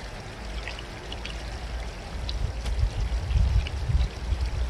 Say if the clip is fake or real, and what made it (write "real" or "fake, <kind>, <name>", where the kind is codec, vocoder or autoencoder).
real